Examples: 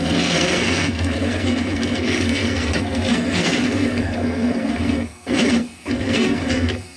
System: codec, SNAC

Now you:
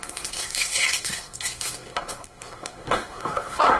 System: codec, SNAC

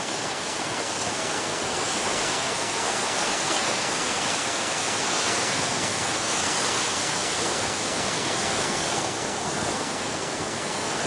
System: codec, SNAC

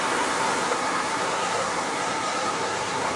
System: codec, SNAC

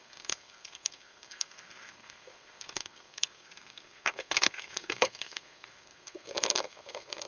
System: codec, SNAC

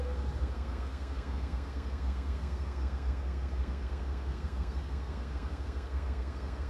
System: codec, SNAC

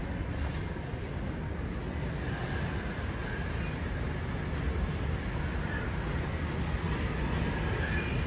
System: none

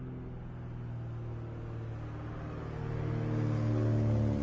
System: none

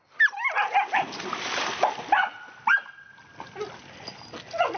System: none